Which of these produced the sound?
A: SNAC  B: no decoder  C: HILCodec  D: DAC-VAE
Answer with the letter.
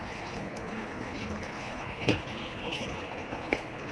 C